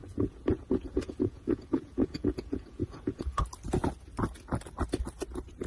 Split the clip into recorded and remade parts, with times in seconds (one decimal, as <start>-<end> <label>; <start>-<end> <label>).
0.0-3.4 remade; 3.4-5.7 recorded